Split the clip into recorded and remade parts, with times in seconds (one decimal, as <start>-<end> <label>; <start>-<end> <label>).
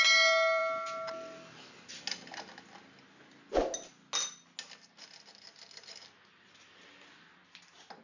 0.0-8.0 recorded